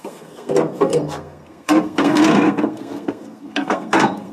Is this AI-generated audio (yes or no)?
yes